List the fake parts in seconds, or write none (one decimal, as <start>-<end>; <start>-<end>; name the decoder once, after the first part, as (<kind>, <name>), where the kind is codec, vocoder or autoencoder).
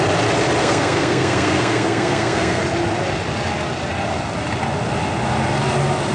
0.6-2.6 (codec, SNAC)